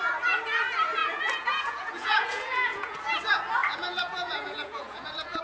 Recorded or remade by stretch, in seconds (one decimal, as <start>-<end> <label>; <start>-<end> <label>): 0.0-1.0 recorded; 1.0-3.0 remade; 3.0-3.6 recorded; 3.6-5.4 remade